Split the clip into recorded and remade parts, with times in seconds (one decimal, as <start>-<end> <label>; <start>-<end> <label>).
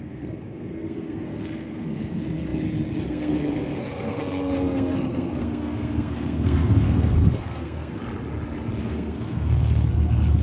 0.0-8.0 remade; 8.0-8.8 recorded; 8.8-10.4 remade